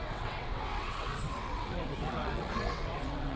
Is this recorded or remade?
remade